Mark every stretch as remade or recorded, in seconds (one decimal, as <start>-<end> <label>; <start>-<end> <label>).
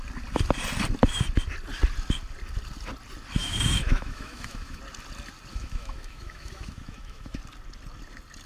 0.0-3.4 recorded; 3.4-4.8 remade; 4.8-5.5 recorded; 5.5-7.4 remade; 7.4-8.5 recorded